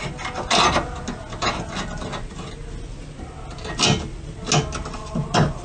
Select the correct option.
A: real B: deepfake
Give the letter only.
A